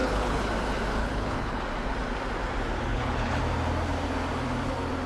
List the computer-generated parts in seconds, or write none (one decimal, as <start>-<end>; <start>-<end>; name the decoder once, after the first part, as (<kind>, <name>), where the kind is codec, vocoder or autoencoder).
0.0-0.5 (codec, HILCodec); 1.0-1.6; 2.9-3.4